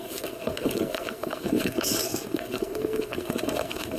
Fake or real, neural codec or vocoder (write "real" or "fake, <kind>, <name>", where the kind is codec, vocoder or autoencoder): fake, codec, SNAC